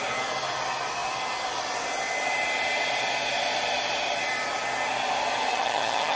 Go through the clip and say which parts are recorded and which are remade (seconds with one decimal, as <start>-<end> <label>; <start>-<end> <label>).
0.0-5.5 recorded; 5.5-6.2 remade